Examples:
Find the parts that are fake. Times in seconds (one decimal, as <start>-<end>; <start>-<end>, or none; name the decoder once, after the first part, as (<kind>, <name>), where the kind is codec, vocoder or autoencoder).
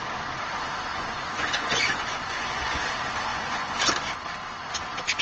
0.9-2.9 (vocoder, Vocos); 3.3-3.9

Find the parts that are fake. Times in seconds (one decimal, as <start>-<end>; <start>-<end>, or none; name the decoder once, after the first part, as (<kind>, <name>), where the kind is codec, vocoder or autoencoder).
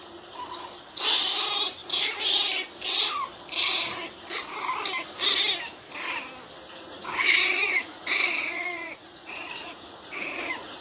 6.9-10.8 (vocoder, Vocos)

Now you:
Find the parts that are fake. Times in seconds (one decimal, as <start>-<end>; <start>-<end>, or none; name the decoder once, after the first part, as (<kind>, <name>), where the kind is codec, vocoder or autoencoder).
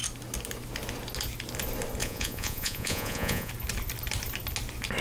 2.0-3.5 (vocoder, Vocos)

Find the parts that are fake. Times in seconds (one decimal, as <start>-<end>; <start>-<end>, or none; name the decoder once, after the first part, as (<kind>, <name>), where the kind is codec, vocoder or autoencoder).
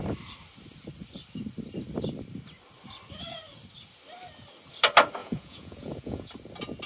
5.2-6.3 (vocoder, Vocos)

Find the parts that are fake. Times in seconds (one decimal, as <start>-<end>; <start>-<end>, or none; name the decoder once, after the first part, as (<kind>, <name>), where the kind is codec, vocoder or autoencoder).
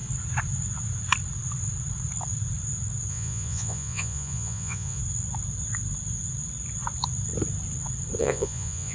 3.1-5.0 (vocoder, Vocos); 8.2-8.9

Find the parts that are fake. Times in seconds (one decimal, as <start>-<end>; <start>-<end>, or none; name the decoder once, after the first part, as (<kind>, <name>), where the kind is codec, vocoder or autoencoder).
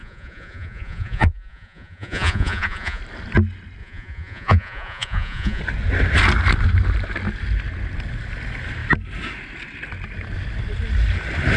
0.0-3.0 (vocoder, Vocos); 3.8-5.6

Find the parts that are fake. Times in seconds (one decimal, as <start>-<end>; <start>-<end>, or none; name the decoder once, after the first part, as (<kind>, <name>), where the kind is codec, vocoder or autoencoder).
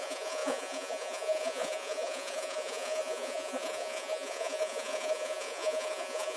0.0-6.4 (vocoder, Vocos)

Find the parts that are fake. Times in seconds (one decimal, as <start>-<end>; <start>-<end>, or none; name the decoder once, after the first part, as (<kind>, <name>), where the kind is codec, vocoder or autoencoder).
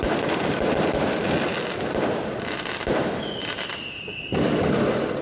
none